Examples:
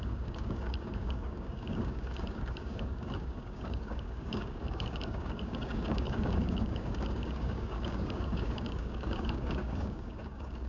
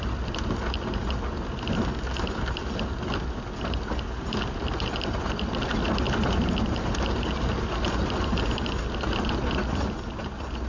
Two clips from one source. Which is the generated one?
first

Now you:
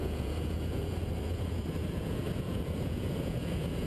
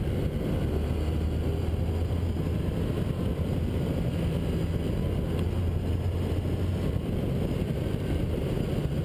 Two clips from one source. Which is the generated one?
first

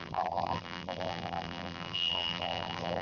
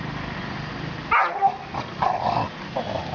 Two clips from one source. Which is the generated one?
first